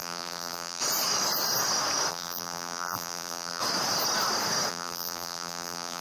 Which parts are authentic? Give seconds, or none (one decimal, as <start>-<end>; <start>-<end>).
0.8-2.1; 3.6-4.7